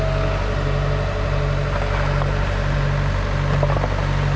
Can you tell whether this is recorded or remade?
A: recorded